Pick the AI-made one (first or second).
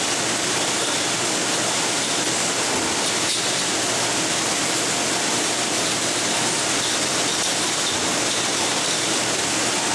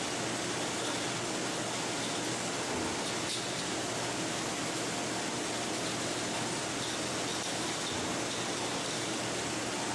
first